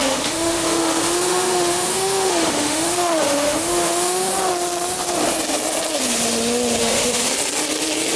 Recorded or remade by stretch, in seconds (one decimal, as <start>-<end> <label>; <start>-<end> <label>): 0.0-4.3 remade; 4.3-6.8 recorded; 6.8-7.3 remade; 7.3-8.2 recorded